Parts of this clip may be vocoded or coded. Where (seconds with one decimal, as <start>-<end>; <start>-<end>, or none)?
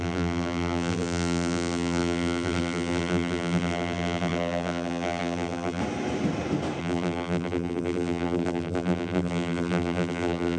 0.0-5.8; 6.8-10.6